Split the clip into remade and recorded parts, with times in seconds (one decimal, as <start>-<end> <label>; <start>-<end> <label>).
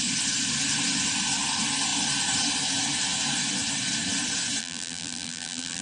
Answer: 0.0-4.6 recorded; 4.6-5.8 remade